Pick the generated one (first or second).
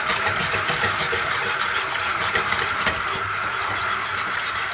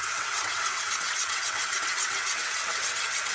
second